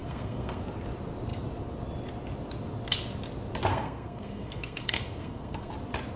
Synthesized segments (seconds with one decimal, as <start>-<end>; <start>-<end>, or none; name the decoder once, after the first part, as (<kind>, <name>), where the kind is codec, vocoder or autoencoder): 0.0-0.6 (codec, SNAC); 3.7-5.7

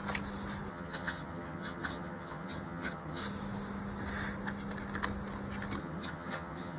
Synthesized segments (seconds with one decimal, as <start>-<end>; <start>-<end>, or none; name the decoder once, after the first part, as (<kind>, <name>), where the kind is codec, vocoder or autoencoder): 0.7-3.2 (vocoder, HiFi-GAN); 5.8-6.8

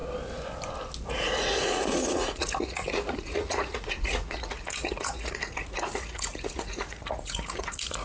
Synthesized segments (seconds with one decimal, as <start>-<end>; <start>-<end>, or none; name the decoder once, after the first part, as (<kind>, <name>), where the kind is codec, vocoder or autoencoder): 1.1-8.0 (vocoder, Vocos)

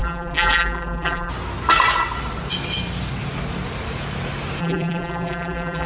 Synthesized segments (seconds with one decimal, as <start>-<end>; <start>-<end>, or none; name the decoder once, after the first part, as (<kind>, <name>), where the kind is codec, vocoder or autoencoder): 0.0-1.3 (vocoder, BigVGAN v2); 4.6-5.9

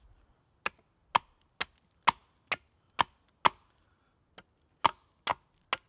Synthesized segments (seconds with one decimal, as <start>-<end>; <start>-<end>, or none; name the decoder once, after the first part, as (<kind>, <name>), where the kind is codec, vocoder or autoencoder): none